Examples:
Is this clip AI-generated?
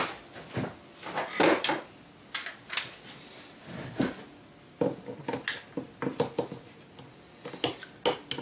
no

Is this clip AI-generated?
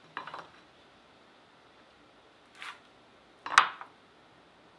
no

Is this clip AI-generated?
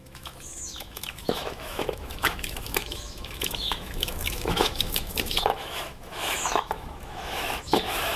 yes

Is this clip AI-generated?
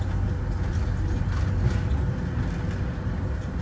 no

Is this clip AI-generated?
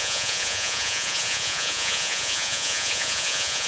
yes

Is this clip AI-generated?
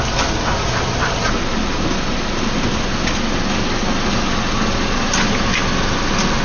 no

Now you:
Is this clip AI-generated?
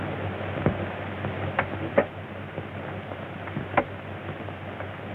no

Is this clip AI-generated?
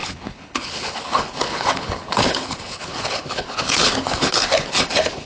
yes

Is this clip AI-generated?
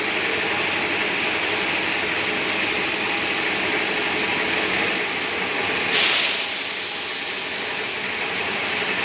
no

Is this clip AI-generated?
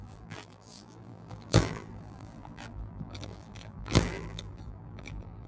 yes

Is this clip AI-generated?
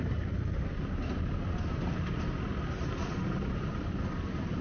no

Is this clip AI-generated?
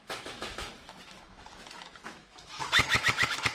yes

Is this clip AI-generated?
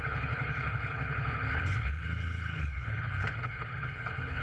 yes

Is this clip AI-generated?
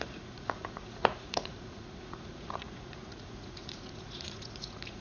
yes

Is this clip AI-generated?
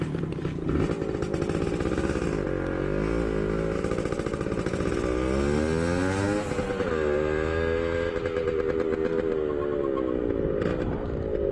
no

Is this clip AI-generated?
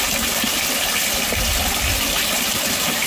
no